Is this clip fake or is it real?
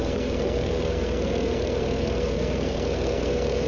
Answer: fake